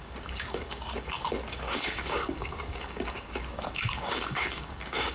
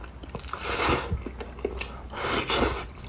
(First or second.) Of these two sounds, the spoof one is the first